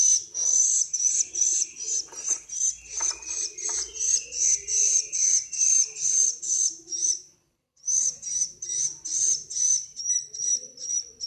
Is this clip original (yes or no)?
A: no